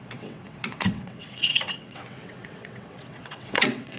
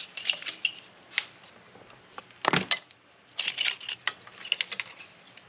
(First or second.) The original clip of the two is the second